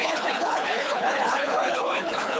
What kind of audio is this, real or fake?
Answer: fake